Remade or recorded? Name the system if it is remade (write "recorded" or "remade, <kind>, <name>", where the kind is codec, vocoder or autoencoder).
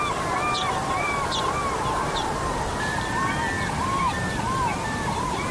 remade, vocoder, BigVGAN v2